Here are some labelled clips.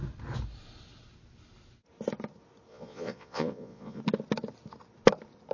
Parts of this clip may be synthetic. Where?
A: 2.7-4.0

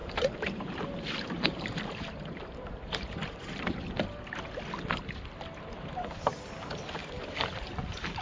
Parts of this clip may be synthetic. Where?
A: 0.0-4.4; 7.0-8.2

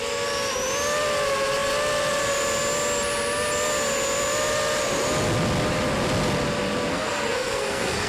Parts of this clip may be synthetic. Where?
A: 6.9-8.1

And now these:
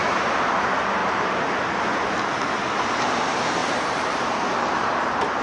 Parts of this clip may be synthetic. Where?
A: 0.0-5.4